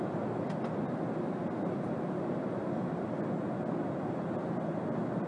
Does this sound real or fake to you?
real